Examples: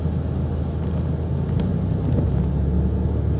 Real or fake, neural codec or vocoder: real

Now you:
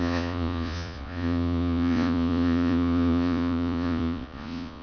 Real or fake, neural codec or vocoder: fake, vocoder, Vocos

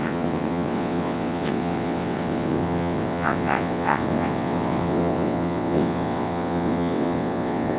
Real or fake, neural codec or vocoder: fake, vocoder, WaveNeXt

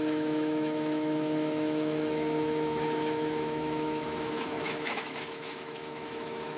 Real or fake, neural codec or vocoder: fake, autoencoder, DAC-VAE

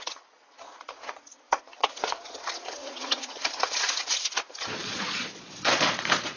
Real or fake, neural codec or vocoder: fake, vocoder, Vocos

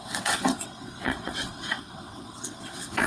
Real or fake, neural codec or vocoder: fake, vocoder, WaveNeXt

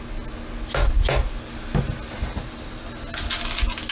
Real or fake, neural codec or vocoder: real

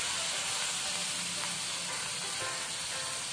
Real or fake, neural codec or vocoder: real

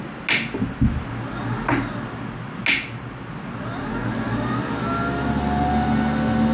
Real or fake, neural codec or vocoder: real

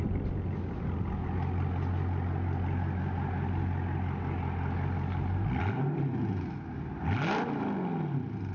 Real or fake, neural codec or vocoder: real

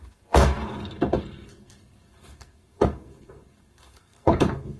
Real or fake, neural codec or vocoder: fake, codec, SNAC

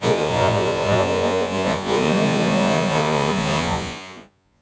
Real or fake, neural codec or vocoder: fake, vocoder, Vocos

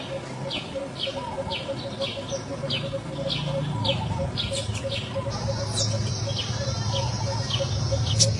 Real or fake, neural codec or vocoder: real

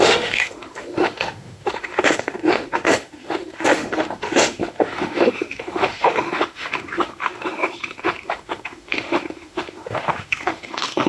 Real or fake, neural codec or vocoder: fake, autoencoder, DAC-VAE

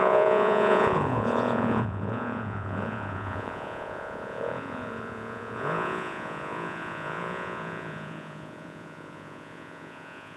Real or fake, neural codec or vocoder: fake, vocoder, Vocos